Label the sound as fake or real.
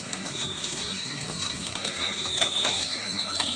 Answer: fake